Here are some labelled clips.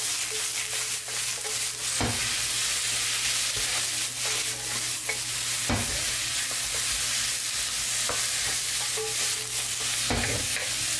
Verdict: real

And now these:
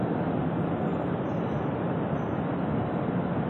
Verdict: real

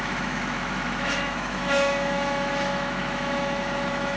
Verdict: fake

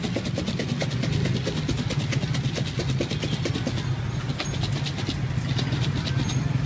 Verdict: real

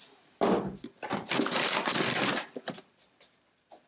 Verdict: real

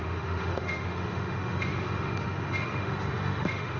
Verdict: fake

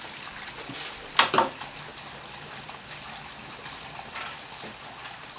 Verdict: real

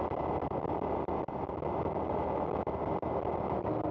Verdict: real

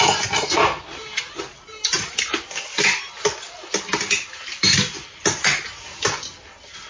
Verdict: real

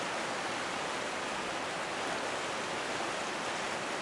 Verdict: real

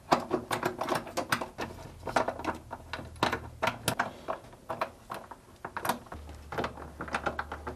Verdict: real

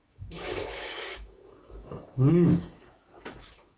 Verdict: fake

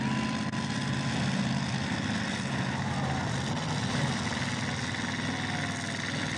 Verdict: real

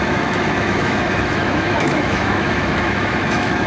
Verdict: fake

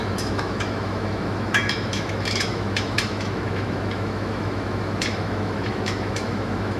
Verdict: fake